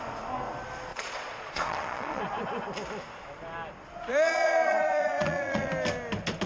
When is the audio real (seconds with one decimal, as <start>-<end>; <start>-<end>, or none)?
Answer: 0.0-0.9; 2.2-4.1; 5.7-6.5